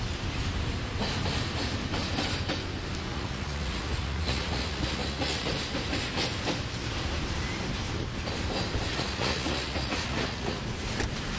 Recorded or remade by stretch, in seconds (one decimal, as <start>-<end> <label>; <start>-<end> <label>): 0.0-3.1 recorded; 3.1-5.5 remade; 5.5-8.9 recorded; 8.9-10.6 remade; 10.6-11.4 recorded

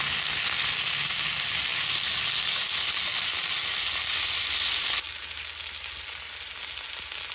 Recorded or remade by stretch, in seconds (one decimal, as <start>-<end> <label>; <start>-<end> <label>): 0.0-7.3 recorded

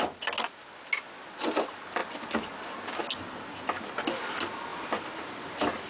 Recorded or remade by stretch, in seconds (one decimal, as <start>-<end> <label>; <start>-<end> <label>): 0.0-5.9 recorded

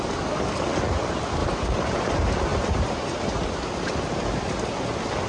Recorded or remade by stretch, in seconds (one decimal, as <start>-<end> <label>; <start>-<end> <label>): 0.0-1.4 recorded; 1.4-2.1 remade; 2.1-2.5 recorded; 2.5-3.1 remade; 3.1-5.3 recorded

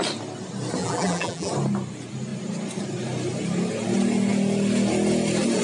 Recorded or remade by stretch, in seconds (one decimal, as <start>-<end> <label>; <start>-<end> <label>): 0.0-0.8 recorded; 0.8-1.5 remade; 1.5-5.6 recorded